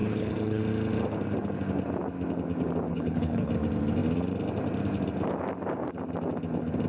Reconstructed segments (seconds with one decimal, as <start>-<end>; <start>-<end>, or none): 0.0-0.6; 2.9-3.5